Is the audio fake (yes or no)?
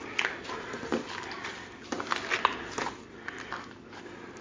no